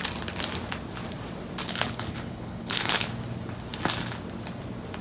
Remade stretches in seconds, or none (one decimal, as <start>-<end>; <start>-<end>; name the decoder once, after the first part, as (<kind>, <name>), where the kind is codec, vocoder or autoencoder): 1.6-3.1 (codec, HILCodec)